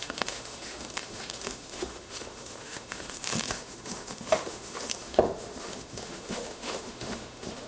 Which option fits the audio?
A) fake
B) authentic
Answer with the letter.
A